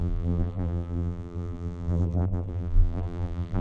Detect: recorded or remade remade